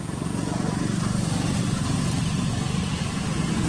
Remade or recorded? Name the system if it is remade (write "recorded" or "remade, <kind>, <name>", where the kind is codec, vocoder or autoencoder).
recorded